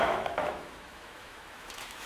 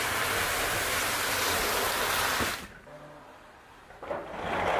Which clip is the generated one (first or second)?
first